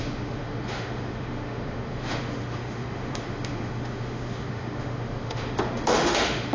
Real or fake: fake